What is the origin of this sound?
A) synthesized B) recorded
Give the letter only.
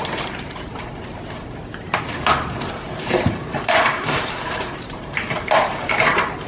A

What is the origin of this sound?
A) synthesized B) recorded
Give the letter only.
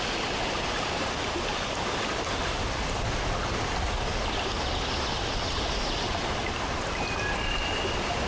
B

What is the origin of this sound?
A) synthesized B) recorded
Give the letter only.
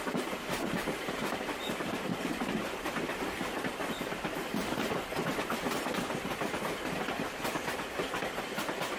A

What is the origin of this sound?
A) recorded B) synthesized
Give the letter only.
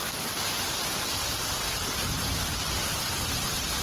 A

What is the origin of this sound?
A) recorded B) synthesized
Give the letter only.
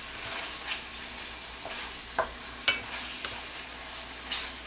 A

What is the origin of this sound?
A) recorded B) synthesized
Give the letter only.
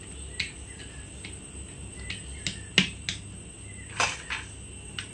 A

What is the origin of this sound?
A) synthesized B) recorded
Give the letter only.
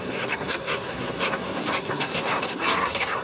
A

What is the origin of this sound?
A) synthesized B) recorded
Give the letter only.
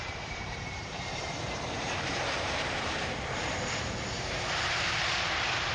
A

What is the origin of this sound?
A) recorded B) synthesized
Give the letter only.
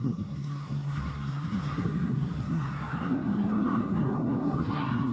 B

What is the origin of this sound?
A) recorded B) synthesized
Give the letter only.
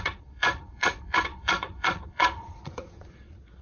B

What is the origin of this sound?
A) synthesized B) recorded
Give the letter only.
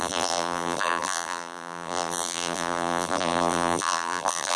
A